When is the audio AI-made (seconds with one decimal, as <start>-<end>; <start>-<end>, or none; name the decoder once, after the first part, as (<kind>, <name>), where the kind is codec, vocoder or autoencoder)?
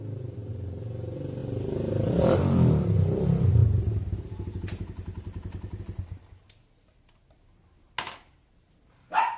1.4-2.2 (vocoder, BigVGAN v2); 3.6-5.8